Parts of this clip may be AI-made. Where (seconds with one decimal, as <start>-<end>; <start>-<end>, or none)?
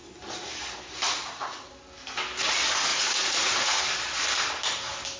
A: 1.1-1.7; 2.9-3.8